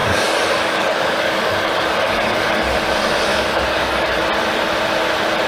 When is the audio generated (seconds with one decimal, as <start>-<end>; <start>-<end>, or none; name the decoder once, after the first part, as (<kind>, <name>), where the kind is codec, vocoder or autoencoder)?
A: 0.0-2.8 (codec, DAC); 3.3-4.2